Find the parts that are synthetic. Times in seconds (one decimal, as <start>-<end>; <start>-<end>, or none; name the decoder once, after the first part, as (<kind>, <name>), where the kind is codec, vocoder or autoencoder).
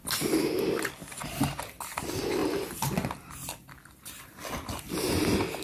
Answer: none